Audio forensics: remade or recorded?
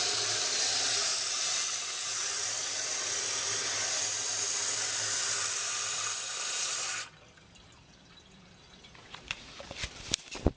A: remade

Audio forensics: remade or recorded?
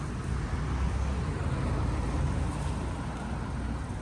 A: recorded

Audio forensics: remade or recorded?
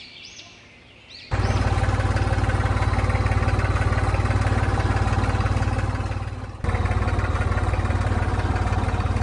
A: recorded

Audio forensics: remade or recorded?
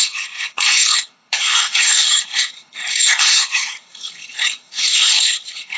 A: remade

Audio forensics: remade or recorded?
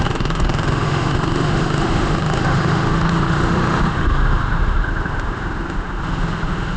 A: remade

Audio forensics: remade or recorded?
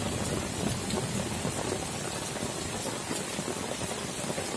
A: recorded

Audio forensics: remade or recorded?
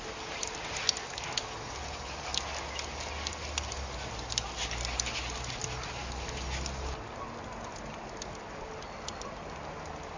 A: recorded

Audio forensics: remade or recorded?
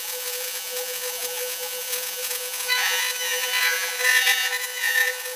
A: remade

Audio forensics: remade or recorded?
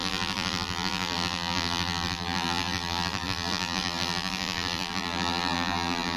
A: remade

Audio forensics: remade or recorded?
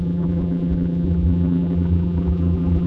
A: remade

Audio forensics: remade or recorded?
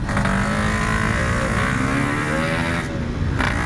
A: recorded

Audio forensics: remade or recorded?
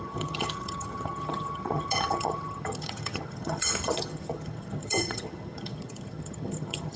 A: remade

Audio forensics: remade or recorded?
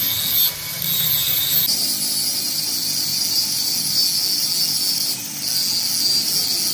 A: recorded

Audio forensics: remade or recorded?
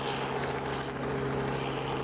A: recorded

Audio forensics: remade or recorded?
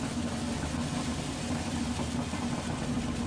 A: recorded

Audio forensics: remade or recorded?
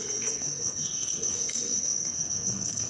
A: remade